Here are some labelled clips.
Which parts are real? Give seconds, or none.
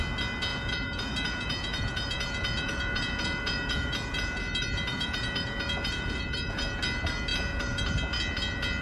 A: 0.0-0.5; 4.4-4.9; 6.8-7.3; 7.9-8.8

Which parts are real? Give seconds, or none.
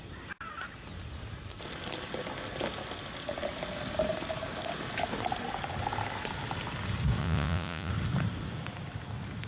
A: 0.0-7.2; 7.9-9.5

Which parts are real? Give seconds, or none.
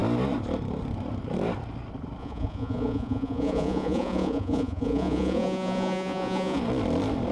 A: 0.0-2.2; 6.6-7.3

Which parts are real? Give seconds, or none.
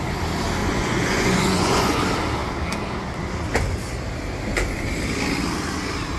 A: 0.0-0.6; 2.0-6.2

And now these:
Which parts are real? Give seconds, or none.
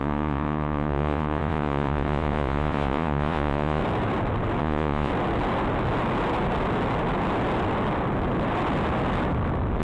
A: 3.8-4.6; 5.1-9.8